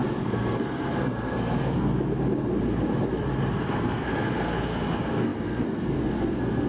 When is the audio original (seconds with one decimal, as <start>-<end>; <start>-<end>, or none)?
1.9-3.6